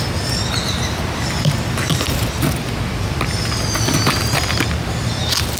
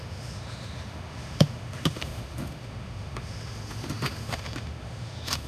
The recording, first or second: first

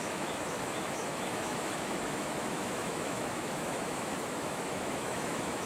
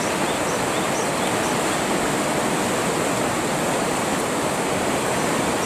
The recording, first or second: second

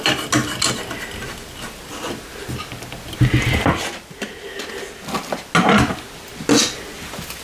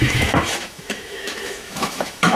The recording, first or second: first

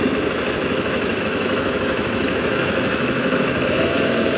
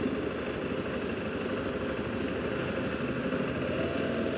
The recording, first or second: second